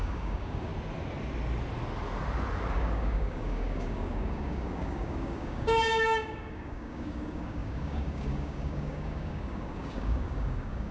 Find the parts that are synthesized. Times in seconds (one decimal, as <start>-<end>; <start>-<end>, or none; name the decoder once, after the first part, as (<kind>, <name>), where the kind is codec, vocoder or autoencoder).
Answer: 0.0-0.7 (codec, DAC); 2.7-10.9